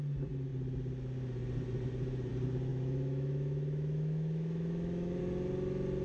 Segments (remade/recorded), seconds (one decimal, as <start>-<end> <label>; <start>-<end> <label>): 0.0-2.7 recorded; 2.7-5.2 remade; 5.2-6.0 recorded